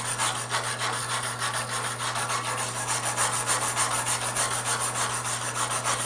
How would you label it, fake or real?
real